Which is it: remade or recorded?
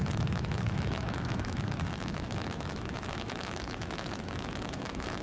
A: remade